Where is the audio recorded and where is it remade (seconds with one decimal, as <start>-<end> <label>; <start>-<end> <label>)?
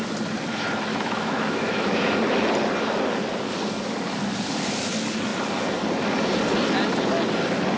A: 0.0-0.9 recorded; 0.9-2.2 remade; 2.2-7.8 recorded